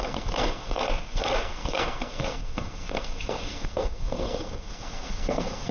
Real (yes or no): no